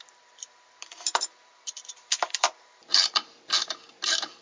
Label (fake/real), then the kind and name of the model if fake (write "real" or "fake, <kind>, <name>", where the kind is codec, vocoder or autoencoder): fake, vocoder, BigVGAN v2